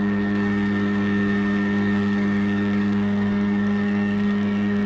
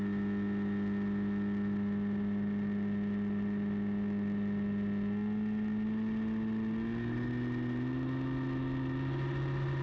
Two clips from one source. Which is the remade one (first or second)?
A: first